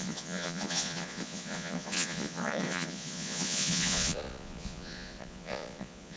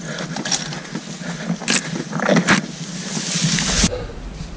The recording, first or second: second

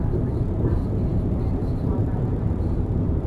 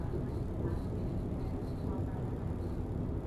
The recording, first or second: second